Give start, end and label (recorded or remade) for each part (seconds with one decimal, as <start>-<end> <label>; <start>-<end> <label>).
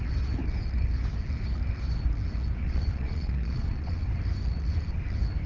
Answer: 0.0-2.6 recorded; 2.6-4.0 remade; 4.0-5.5 recorded